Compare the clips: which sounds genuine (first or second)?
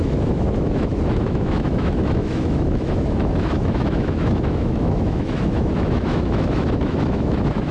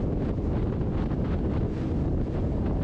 second